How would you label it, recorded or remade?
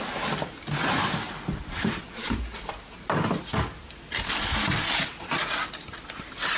recorded